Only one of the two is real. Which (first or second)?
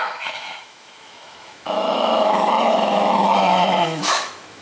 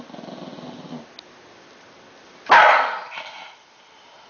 second